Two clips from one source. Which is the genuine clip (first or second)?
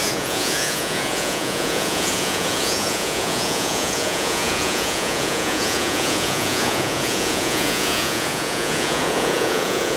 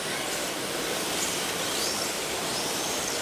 second